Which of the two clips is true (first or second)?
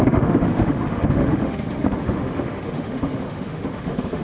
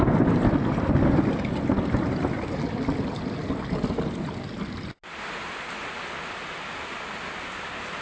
second